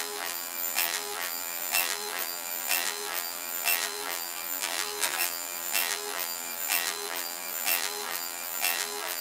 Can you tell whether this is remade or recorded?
remade